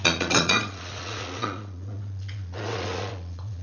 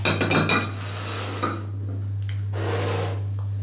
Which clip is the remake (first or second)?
first